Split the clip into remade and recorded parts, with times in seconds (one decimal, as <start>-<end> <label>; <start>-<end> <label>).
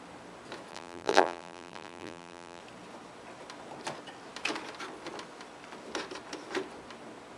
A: 0.0-0.7 recorded; 0.7-2.6 remade; 2.6-7.4 recorded